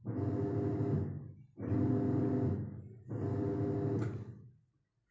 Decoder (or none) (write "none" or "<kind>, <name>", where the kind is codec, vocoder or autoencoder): none